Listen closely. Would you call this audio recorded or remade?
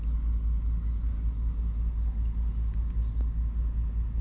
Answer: recorded